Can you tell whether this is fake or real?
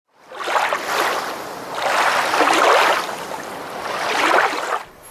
real